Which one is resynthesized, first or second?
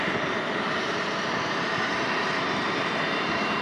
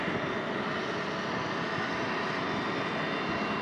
first